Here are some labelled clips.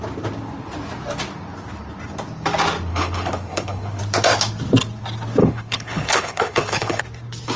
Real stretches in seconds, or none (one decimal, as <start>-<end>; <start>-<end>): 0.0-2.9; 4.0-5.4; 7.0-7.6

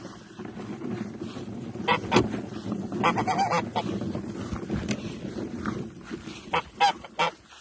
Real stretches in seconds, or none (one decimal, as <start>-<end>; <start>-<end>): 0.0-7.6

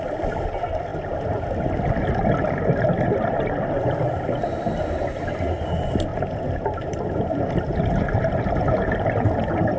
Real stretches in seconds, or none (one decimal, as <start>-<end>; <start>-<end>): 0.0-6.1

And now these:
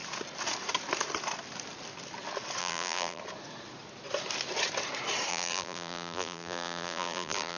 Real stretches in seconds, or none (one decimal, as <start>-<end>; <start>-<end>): 0.0-2.6; 3.2-5.3